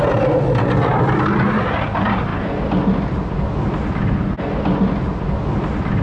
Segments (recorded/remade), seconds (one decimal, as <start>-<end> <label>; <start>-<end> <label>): 0.0-6.0 recorded